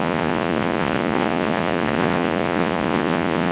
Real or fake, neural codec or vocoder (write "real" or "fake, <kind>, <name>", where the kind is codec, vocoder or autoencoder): fake, vocoder, Vocos